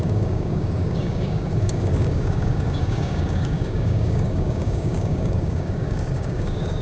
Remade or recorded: remade